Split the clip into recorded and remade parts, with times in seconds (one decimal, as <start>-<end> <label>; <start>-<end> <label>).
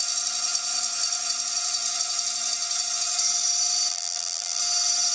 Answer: 0.0-3.9 recorded; 3.9-4.6 remade; 4.6-5.1 recorded